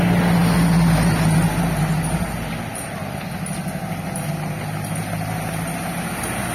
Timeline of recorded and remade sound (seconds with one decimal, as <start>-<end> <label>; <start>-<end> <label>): 0.0-6.5 recorded